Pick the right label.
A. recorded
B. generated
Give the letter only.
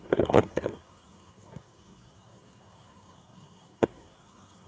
B